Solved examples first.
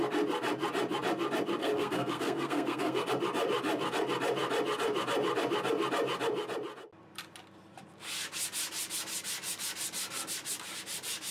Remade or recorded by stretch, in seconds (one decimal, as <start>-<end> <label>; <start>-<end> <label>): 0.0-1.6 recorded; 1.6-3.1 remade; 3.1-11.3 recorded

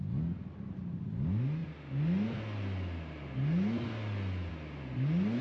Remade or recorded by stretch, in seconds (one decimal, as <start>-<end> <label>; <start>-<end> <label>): 0.0-5.4 recorded

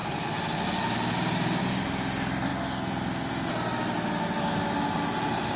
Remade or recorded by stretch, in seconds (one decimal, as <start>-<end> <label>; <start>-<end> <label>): 0.0-5.6 recorded

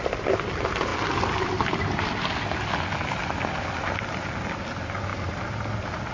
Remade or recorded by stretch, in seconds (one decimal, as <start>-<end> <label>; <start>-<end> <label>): 0.0-6.1 recorded

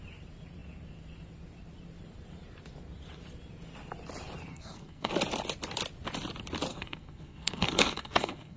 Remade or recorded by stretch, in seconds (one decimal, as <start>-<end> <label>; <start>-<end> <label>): 0.0-4.5 recorded; 4.5-5.1 remade; 5.1-6.7 recorded; 6.7-8.6 remade